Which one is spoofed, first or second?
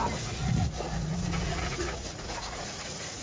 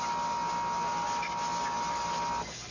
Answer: first